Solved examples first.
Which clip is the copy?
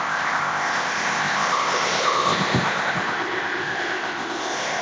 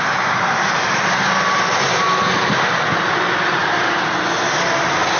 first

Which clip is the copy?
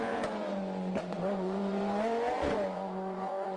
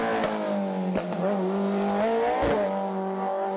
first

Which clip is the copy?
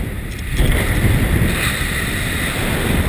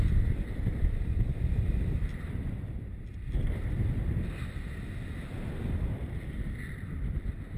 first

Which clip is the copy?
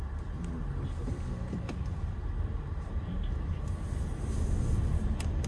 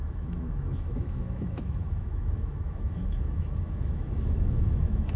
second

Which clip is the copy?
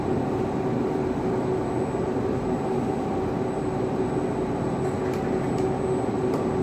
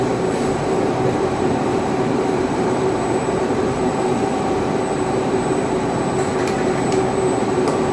second